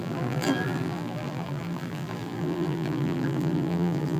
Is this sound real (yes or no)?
no